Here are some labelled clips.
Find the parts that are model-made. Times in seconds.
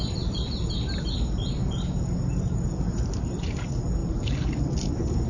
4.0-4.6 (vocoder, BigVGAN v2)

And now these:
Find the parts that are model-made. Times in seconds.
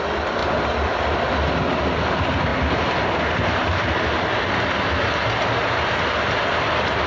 0.4-1.3 (vocoder, BigVGAN v2)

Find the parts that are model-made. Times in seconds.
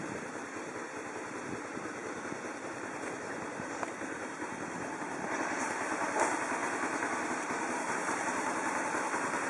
0.0-6.6 (vocoder, BigVGAN v2); 7.3-9.5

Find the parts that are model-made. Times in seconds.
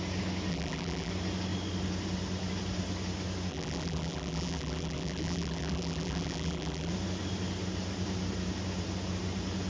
0.5-1.1 (vocoder, BigVGAN v2); 3.5-6.9